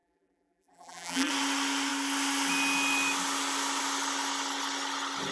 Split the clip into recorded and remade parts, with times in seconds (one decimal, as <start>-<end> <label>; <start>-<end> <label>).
0.0-1.3 remade; 1.3-5.3 recorded